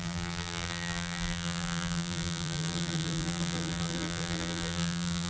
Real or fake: fake